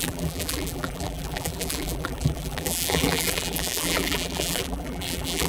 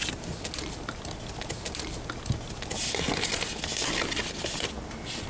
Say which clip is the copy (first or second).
first